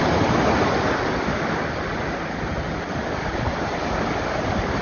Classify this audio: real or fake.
real